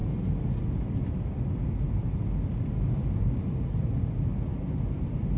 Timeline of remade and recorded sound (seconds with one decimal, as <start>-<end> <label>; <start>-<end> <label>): 0.0-5.4 recorded